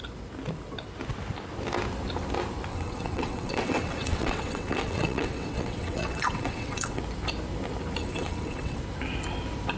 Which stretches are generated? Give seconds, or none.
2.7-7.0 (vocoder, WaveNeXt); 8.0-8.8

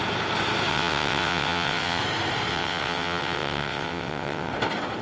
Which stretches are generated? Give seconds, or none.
0.7-2.0 (vocoder, WaveNeXt); 2.5-4.5

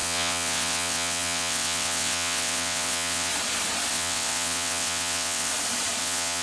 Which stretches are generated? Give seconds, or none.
0.0-3.3 (vocoder, WaveNeXt); 3.9-5.5; 6.0-6.4